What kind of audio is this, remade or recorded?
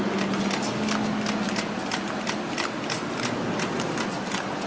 recorded